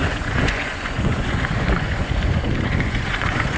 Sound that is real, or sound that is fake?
fake